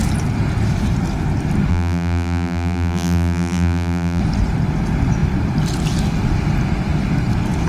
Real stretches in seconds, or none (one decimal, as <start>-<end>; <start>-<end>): 0.0-1.7; 4.2-7.7